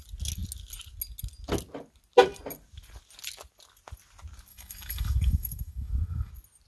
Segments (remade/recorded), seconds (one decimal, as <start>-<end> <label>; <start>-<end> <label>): 0.0-4.5 recorded; 4.5-6.3 remade; 6.3-6.7 recorded